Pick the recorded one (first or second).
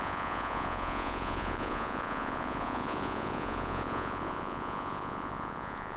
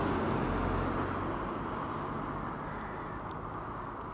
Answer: second